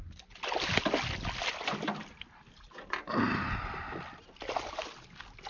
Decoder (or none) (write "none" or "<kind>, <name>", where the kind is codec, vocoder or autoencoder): none